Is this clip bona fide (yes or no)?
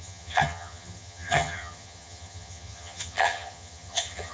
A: no